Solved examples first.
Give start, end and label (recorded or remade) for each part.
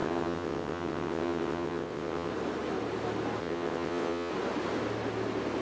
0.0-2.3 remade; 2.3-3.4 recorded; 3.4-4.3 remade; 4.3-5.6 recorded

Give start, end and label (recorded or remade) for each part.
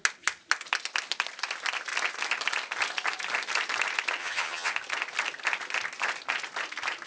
0.0-4.2 recorded; 4.2-4.7 remade; 4.7-7.1 recorded